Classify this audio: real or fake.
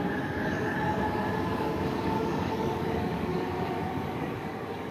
fake